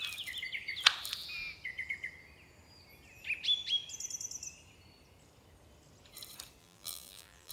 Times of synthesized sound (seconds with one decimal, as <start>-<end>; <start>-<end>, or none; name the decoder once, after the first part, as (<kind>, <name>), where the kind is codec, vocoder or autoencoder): 6.6-7.5 (vocoder, BigVGAN v2)